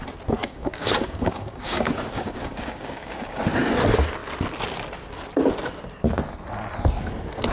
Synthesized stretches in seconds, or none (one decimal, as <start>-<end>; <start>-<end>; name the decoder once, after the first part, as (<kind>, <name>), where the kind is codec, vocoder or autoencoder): 0.4-3.4 (codec, DAC)